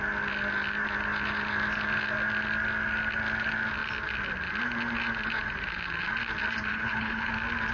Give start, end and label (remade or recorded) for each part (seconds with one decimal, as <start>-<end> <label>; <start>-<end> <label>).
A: 0.0-6.7 recorded; 6.7-7.3 remade; 7.3-7.7 recorded